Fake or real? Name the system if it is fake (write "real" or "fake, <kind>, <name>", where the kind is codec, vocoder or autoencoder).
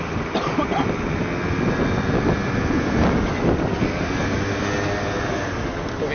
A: real